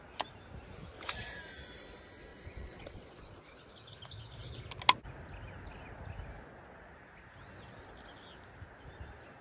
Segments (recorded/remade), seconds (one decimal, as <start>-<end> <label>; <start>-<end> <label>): 0.0-2.3 recorded; 2.3-3.7 remade; 3.7-9.4 recorded